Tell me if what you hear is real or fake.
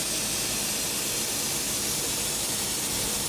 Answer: real